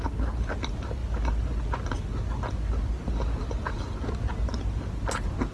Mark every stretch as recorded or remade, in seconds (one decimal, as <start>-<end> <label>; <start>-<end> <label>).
0.0-5.5 recorded